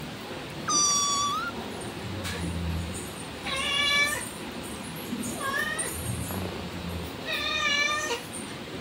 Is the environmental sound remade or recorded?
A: recorded